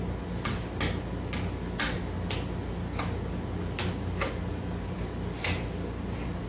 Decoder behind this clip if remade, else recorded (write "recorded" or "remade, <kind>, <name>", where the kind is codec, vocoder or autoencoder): recorded